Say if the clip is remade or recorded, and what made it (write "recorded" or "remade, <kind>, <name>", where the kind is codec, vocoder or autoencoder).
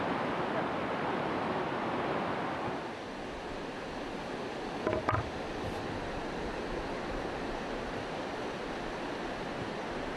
recorded